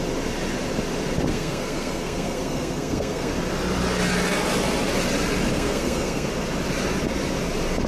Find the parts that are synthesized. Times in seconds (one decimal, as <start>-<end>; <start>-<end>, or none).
1.3-3.3; 5.5-6.3